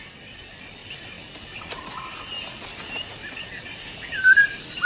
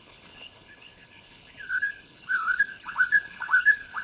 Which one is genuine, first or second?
first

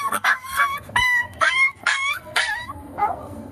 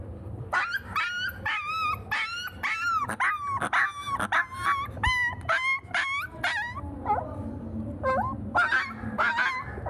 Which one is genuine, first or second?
second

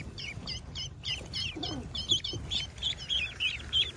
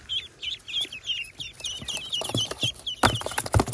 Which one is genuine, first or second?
second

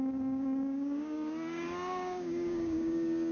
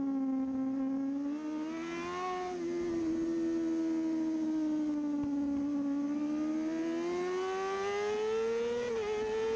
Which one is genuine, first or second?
second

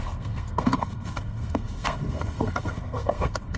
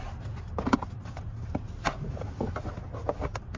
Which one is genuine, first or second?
second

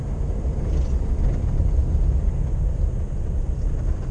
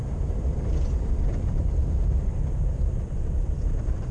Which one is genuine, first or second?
first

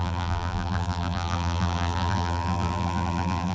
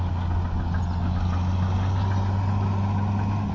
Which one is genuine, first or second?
second